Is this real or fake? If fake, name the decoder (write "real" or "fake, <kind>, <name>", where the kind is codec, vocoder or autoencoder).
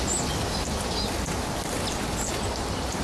real